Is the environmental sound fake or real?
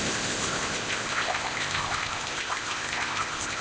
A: fake